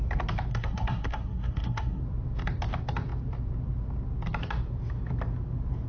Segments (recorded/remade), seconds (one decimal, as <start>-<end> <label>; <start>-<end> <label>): 0.0-0.5 recorded; 0.5-2.0 remade; 2.0-5.9 recorded